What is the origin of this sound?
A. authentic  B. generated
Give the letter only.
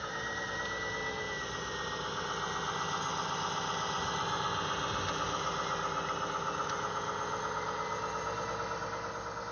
A